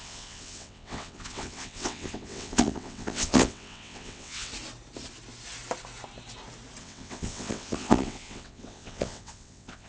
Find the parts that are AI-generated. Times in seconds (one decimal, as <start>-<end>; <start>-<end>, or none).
0.0-4.5; 6.8-9.9